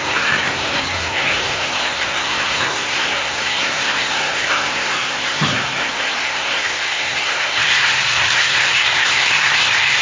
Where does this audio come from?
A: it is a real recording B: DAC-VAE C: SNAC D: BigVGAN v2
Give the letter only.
C